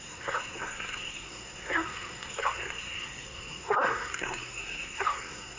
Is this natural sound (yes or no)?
no